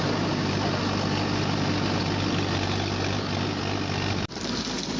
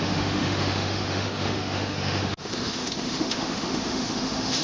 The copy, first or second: second